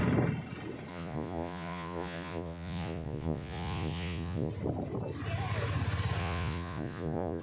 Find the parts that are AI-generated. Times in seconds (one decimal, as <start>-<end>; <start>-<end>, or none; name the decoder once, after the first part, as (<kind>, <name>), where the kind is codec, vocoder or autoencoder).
0.9-4.5 (vocoder, Vocos); 6.2-7.4